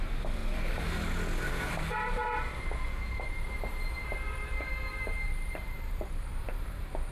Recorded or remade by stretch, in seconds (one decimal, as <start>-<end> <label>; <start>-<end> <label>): 0.0-4.1 recorded; 4.1-7.1 remade